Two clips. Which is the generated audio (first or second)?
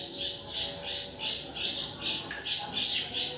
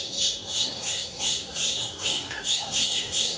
second